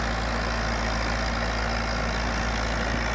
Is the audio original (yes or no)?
yes